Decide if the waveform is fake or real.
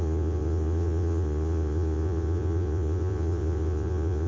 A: fake